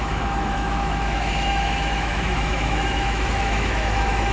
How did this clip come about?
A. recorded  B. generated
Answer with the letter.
B